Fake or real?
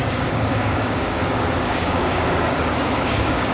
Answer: fake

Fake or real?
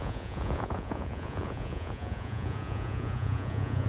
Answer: fake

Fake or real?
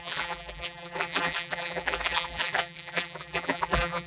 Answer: fake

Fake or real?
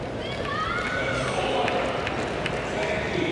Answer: real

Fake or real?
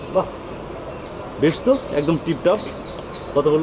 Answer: real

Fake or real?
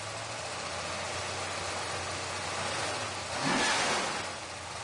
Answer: real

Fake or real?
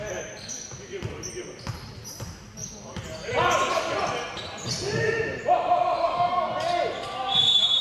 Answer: real